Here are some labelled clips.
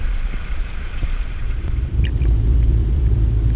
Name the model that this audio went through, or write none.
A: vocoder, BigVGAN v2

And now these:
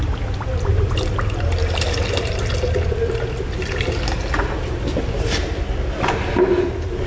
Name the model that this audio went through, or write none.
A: none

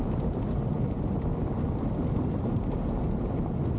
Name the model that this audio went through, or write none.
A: none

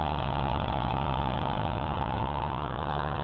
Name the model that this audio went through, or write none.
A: vocoder, WaveNeXt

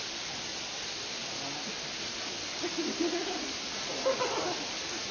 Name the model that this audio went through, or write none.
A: none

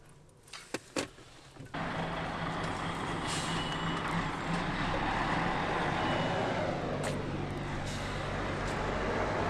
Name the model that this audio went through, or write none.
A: none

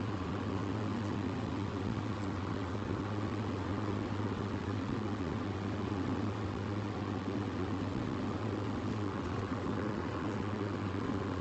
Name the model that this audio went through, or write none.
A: vocoder, WaveNeXt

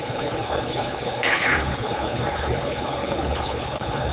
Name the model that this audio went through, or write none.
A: codec, HILCodec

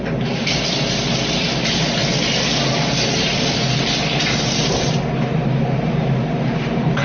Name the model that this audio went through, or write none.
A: none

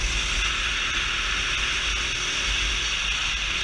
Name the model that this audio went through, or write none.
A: none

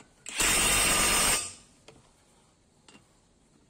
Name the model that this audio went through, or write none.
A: none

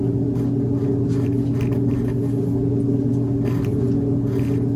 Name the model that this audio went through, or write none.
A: none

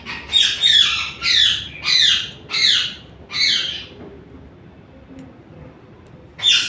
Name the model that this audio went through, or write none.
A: none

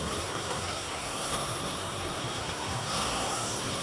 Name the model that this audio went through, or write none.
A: codec, SNAC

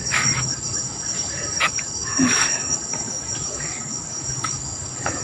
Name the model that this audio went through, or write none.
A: codec, DAC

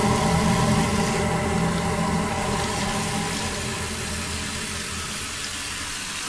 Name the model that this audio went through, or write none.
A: none